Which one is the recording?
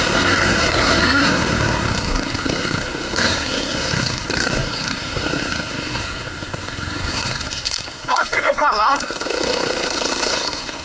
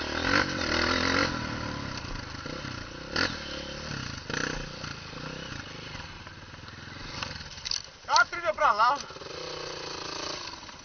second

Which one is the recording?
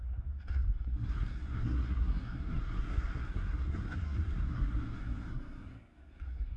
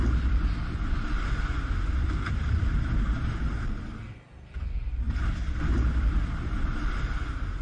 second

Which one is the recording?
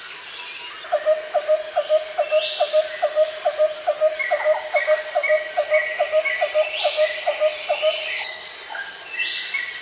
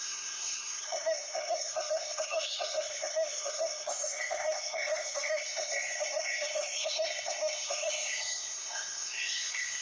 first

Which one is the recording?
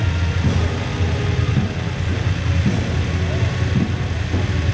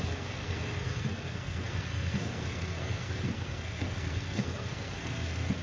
first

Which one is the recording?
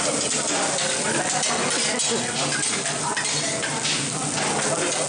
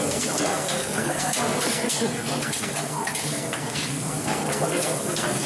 first